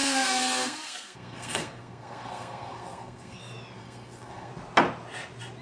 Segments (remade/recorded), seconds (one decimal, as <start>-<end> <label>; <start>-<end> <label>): 0.0-3.4 remade; 3.4-3.8 recorded; 3.8-4.5 remade; 4.5-5.6 recorded